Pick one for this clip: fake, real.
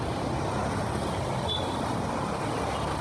real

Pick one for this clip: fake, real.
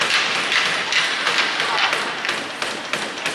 real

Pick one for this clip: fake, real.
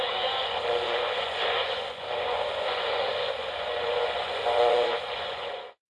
fake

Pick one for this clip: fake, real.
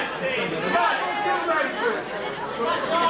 real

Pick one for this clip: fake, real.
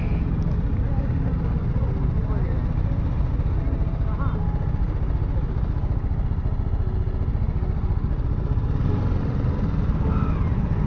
real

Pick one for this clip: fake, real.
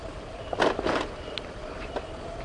real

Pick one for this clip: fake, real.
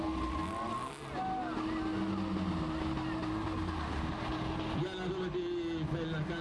real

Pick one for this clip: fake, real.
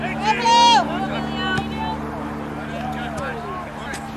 real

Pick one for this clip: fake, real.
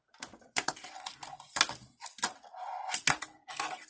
real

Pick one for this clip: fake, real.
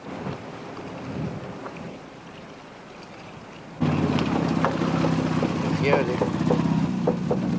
real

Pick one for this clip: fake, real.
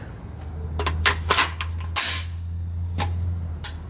real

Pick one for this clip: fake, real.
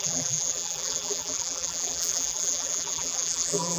fake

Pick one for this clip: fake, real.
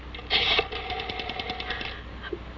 real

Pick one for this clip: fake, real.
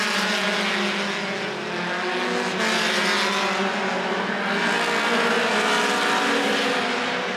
real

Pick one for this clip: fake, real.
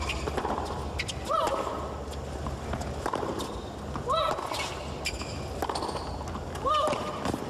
real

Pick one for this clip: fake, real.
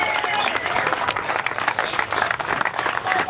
fake